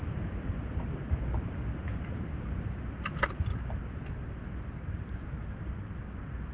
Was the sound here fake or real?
real